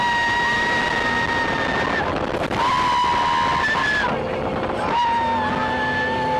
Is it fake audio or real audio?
real